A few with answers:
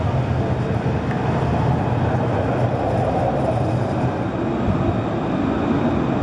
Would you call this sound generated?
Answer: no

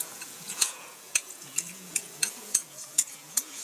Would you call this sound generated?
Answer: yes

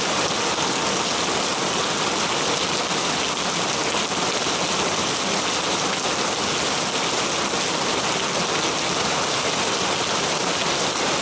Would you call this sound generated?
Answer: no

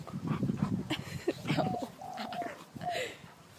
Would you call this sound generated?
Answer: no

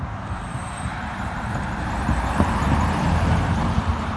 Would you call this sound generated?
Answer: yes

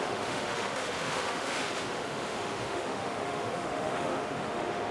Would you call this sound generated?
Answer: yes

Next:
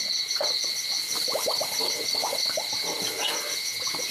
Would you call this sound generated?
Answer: no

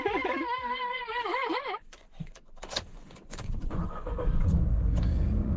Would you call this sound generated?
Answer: yes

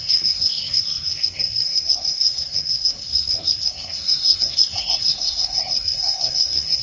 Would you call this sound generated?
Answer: yes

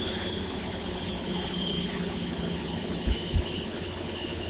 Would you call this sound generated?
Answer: yes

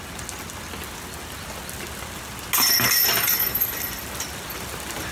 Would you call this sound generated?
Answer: no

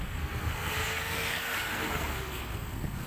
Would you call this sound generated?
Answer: yes